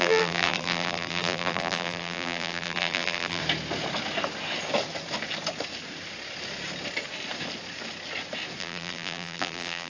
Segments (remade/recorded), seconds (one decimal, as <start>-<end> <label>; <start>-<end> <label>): 0.0-3.4 remade; 3.4-8.6 recorded; 8.6-9.9 remade